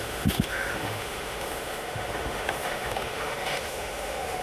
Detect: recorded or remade remade